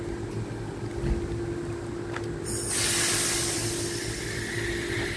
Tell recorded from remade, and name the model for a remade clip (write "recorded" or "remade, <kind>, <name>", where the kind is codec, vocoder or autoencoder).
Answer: recorded